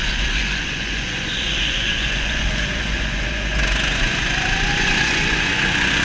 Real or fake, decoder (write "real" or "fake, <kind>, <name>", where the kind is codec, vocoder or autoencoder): fake, vocoder, Vocos